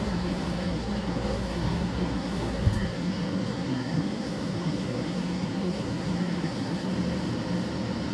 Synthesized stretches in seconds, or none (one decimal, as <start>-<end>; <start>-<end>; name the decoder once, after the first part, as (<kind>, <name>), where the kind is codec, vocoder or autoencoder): 0.0-6.9 (codec, SNAC)